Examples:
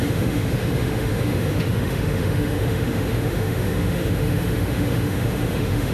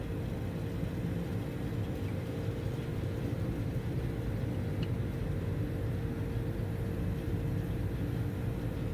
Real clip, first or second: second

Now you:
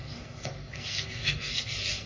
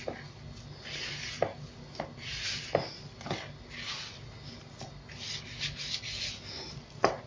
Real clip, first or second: second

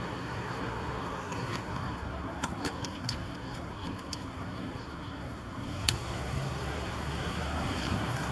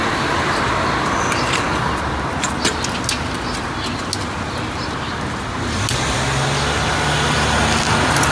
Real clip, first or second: second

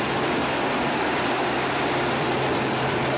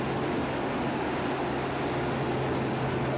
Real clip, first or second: second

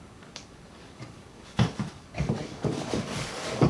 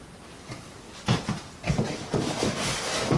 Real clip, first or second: second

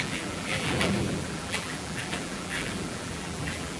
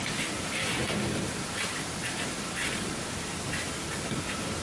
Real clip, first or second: second